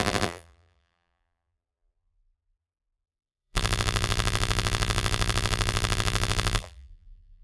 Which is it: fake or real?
fake